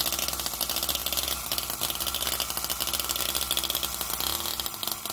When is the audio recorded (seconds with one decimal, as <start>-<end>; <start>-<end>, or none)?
0.0-5.1